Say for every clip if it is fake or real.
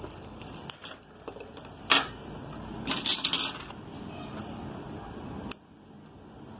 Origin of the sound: real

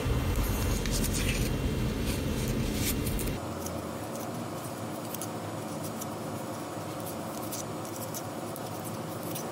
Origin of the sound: real